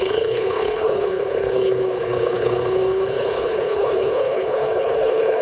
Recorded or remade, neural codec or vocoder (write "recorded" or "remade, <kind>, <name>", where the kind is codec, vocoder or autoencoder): remade, codec, HILCodec